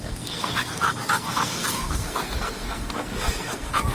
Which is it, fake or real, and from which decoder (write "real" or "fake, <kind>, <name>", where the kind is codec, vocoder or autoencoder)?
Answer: fake, codec, SNAC